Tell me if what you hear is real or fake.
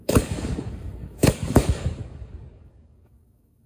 fake